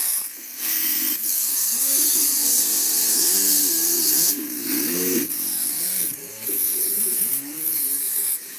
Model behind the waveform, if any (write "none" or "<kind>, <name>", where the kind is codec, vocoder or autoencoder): codec, SNAC